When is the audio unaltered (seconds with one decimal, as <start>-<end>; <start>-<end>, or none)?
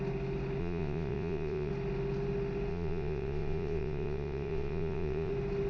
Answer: 0.0-0.6; 1.7-2.7; 5.3-5.7